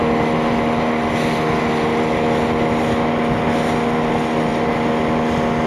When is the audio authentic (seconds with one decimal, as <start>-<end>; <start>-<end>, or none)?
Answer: 0.0-5.7